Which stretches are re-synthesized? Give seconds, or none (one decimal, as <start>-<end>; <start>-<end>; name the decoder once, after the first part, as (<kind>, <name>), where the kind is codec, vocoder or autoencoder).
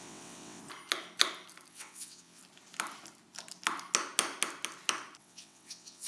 0.0-0.6 (vocoder, WaveNeXt); 1.7-2.4; 5.2-6.1